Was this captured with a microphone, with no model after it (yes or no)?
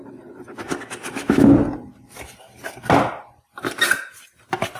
yes